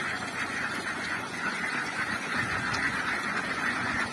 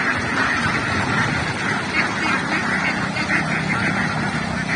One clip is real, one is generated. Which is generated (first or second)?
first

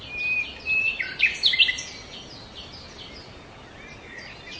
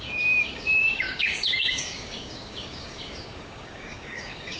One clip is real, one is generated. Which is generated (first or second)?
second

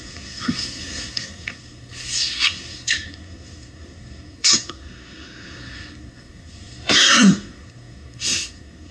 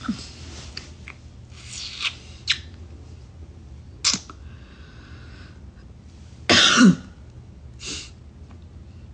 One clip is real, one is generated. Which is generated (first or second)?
first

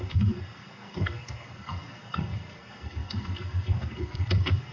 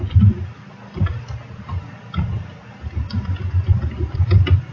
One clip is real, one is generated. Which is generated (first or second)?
first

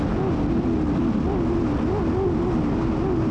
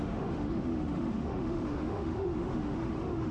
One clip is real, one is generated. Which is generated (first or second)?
second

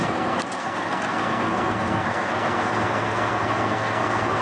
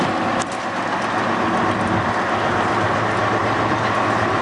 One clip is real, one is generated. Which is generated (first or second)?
first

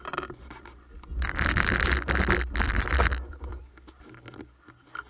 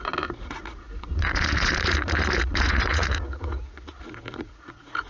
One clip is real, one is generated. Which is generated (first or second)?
second